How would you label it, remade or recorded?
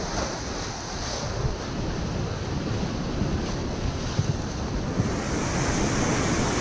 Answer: recorded